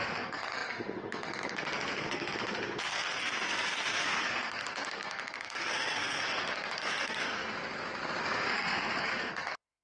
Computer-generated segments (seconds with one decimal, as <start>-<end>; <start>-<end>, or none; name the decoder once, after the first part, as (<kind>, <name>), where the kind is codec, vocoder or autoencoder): 0.0-7.5 (codec, SNAC); 8.2-9.8